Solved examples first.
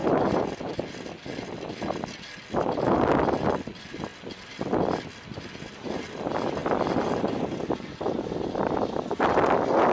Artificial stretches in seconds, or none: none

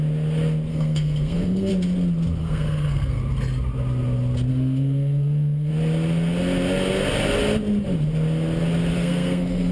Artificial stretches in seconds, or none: 0.7-1.7 (codec, SNAC); 2.4-3.2; 4.5-5.7; 8.9-9.7